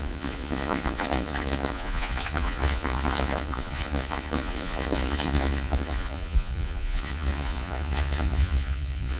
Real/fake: fake